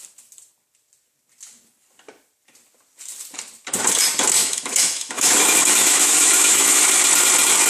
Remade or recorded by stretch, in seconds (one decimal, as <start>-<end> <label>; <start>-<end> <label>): 0.0-4.4 recorded; 4.4-6.8 remade; 6.8-7.7 recorded